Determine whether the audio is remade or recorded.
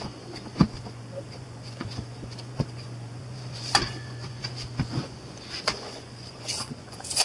remade